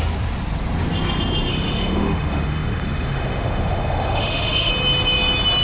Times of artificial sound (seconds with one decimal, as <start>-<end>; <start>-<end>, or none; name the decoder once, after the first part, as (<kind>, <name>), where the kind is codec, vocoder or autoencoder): 1.5-4.7 (autoencoder, DAC-VAE)